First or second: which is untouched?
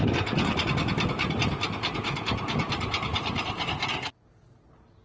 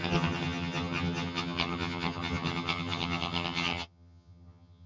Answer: first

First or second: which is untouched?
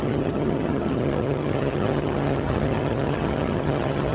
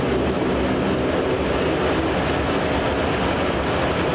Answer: second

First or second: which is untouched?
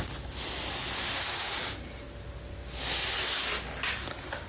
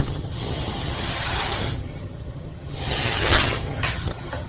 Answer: first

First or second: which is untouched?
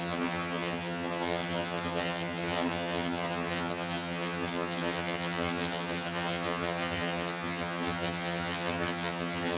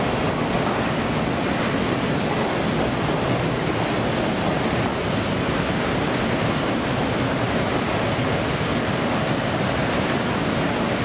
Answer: second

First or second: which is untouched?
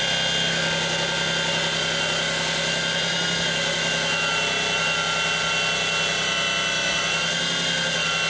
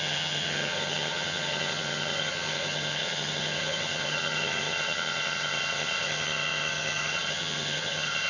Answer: first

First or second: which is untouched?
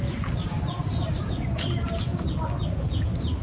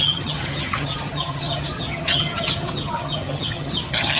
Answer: first